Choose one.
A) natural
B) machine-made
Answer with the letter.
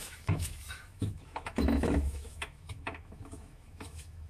B